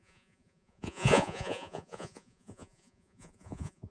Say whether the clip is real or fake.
fake